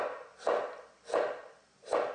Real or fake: real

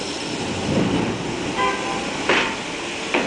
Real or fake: real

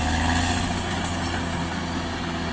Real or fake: real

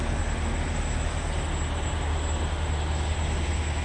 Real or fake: real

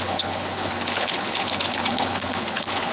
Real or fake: fake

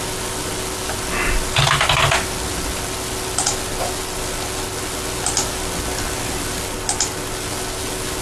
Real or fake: real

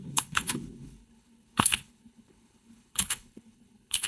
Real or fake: fake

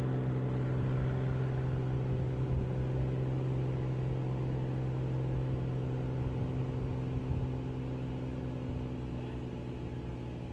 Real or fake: real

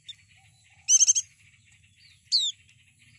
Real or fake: real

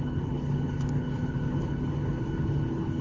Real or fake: fake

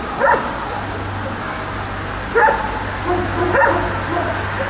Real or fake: real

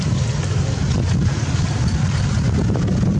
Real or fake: real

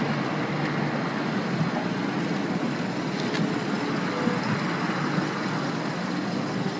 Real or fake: real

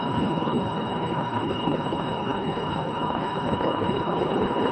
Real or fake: fake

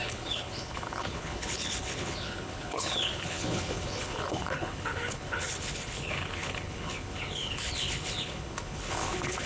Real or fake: fake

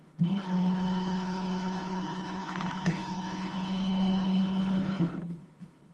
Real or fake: fake